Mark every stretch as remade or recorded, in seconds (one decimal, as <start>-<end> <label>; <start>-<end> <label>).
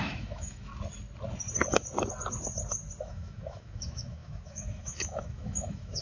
0.0-0.7 remade; 0.7-3.0 recorded; 3.0-6.0 remade